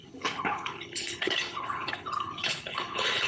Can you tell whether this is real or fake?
fake